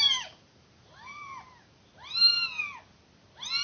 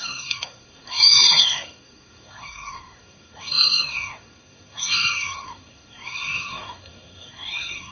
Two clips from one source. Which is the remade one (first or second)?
second